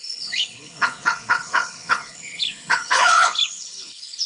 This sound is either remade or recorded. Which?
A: remade